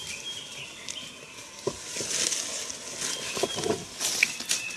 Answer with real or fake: real